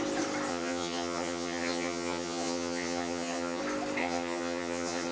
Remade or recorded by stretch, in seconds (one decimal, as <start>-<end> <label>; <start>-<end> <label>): 0.0-0.5 recorded; 0.5-3.6 remade; 3.6-4.0 recorded; 4.0-5.1 remade

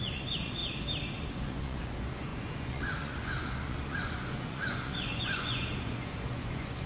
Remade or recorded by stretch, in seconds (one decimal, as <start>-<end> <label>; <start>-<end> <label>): 0.0-0.6 remade; 0.6-1.2 recorded; 1.2-6.9 remade

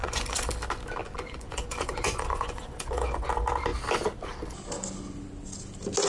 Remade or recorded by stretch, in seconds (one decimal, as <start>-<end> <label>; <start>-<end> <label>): 0.0-0.5 remade; 0.5-1.0 recorded; 1.0-3.3 remade; 3.3-6.1 recorded